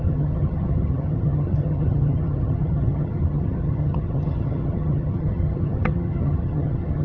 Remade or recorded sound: remade